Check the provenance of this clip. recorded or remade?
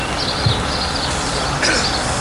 recorded